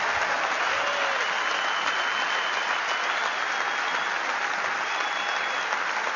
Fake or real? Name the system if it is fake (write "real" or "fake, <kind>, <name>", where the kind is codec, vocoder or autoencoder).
real